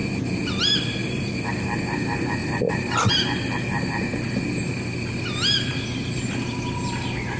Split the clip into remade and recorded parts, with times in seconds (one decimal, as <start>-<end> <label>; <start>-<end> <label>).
0.0-0.6 remade; 0.6-1.0 recorded; 1.0-1.6 remade; 1.6-2.4 recorded; 2.4-3.1 remade; 3.1-7.4 recorded